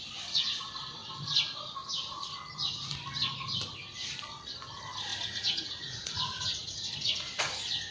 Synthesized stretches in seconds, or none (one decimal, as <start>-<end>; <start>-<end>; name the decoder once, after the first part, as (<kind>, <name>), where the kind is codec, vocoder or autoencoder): 5.1-7.4 (vocoder, Vocos)